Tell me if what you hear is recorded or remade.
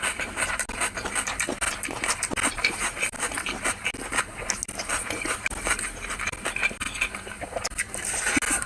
recorded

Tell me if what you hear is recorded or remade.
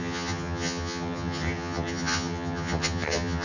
remade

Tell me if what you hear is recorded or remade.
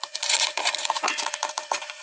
remade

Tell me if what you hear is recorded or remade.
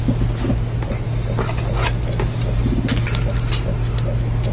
recorded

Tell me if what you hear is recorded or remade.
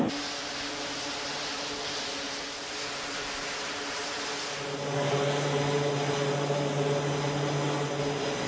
recorded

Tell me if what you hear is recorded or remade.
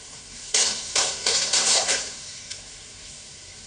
remade